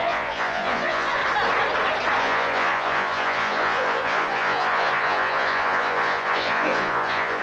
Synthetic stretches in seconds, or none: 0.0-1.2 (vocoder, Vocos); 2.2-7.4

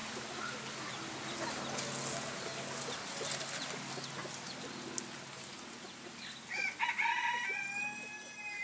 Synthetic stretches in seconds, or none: none